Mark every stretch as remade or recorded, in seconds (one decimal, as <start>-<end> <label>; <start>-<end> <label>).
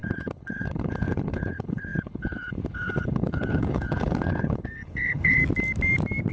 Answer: 0.0-5.4 remade; 5.4-6.3 recorded